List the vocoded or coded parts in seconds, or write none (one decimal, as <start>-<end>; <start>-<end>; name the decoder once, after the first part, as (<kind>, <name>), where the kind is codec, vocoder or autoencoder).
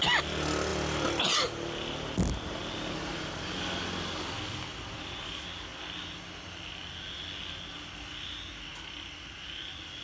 none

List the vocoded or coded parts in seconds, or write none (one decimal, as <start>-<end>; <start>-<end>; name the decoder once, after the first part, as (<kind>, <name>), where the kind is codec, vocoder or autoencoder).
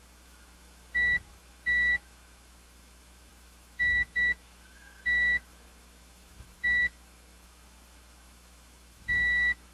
0.0-9.7 (autoencoder, DAC-VAE)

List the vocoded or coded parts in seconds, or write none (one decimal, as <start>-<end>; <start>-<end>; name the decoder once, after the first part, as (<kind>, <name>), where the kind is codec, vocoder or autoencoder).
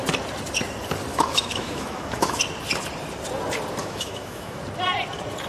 1.1-2.4 (autoencoder, DAC-VAE); 3.8-4.6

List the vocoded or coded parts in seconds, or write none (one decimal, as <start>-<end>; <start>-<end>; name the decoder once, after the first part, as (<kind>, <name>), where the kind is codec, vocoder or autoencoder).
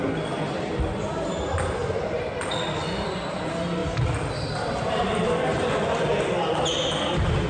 none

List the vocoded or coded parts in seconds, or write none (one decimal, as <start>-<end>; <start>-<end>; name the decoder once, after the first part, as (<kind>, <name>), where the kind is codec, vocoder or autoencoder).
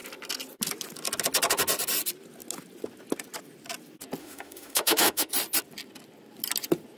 4.2-5.3 (autoencoder, DAC-VAE)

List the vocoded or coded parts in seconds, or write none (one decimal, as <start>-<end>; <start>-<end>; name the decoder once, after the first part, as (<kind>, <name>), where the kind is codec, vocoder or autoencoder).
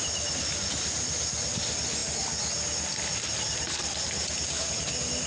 none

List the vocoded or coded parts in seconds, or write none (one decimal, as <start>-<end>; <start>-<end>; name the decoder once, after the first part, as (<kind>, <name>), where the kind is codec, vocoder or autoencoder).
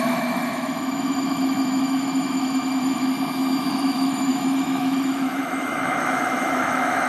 0.0-3.1 (autoencoder, DAC-VAE); 3.7-7.1